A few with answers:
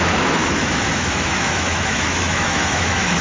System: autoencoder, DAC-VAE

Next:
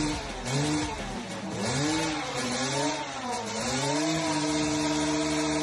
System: none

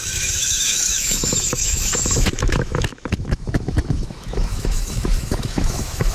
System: autoencoder, DAC-VAE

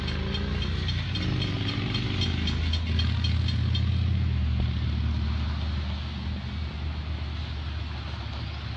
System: none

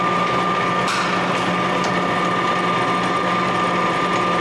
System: none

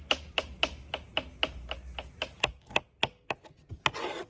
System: none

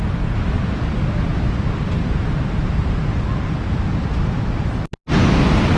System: none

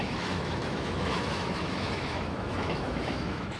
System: autoencoder, DAC-VAE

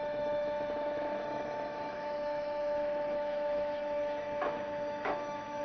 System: autoencoder, DAC-VAE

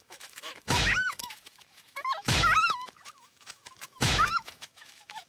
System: autoencoder, DAC-VAE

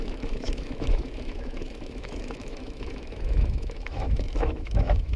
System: autoencoder, DAC-VAE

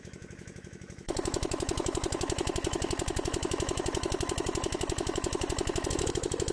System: autoencoder, DAC-VAE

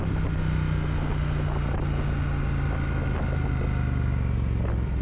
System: none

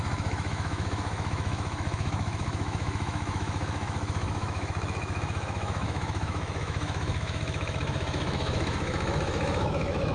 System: autoencoder, DAC-VAE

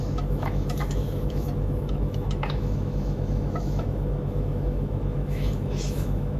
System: autoencoder, DAC-VAE